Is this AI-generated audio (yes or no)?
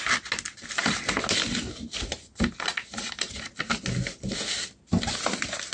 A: no